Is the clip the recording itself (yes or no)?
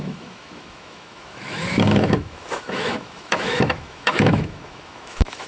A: no